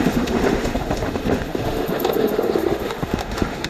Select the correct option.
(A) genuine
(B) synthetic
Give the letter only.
B